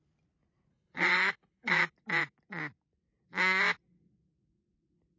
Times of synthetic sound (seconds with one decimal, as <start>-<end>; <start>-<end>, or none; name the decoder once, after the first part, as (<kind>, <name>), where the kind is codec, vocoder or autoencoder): 0.7-1.9 (codec, HILCodec)